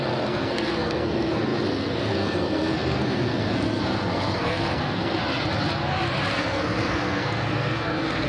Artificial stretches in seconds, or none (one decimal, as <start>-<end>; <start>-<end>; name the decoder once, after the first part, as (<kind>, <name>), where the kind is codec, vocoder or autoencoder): 0.0-5.2 (codec, SNAC); 6.3-8.3